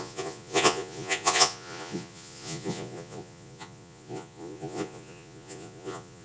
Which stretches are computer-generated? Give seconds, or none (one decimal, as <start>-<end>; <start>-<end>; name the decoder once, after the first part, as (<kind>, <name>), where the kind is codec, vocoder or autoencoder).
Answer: 0.0-6.2 (vocoder, Vocos)